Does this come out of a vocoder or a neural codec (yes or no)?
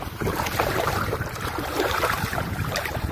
yes